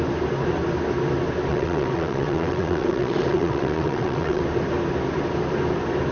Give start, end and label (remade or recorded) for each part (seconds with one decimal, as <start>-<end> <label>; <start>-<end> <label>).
0.0-1.5 recorded; 1.5-4.4 remade; 4.4-6.1 recorded